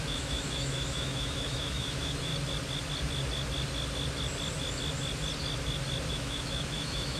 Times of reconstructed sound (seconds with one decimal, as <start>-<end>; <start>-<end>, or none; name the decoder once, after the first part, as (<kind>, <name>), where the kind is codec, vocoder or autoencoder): 0.0-2.3 (autoencoder, DAC-VAE); 6.1-7.2